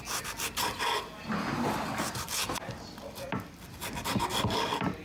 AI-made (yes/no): no